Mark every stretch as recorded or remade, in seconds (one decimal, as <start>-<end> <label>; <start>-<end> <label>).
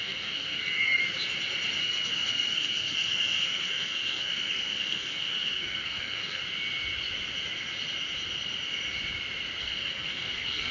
0.0-1.0 remade; 1.0-1.8 recorded; 1.8-6.4 remade; 6.4-9.6 recorded; 9.6-10.7 remade